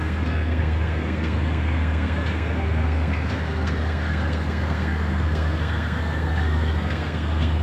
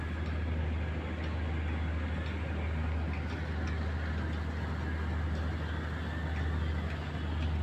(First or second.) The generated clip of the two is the first